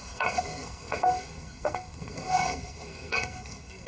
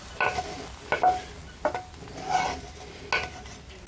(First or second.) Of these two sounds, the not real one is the first